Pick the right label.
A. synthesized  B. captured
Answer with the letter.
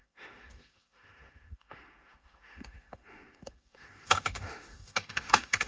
A